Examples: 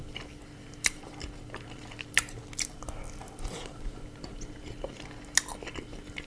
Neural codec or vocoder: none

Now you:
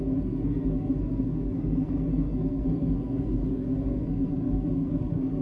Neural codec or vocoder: codec, SNAC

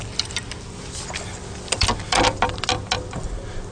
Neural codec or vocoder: none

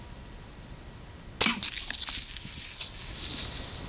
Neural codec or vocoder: none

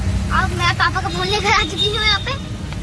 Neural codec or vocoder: none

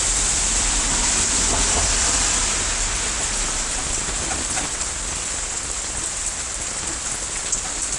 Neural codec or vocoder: none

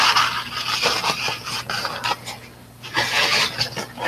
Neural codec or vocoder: none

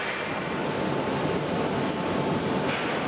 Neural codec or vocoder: none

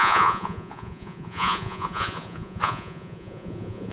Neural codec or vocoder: vocoder, Vocos